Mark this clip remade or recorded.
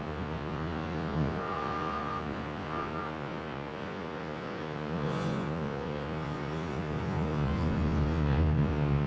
remade